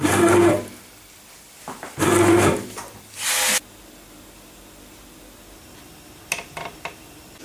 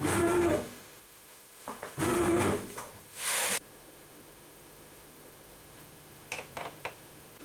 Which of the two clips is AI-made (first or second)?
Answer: second